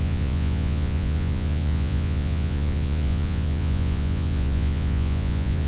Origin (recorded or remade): remade